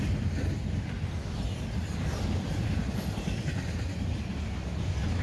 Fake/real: real